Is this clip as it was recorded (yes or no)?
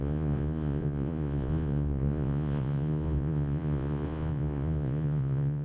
no